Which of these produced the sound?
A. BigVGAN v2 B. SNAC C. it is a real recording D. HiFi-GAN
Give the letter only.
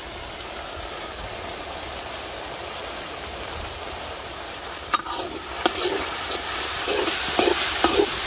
C